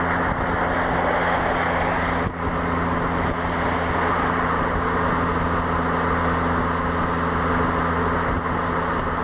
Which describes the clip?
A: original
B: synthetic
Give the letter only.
A